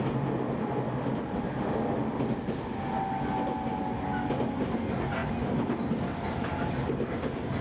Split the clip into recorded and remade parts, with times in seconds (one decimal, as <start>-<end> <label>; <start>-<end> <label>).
0.0-7.6 recorded